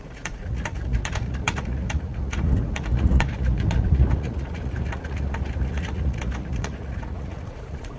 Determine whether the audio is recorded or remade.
remade